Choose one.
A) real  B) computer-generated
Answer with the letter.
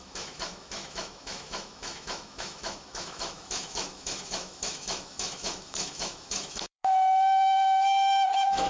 B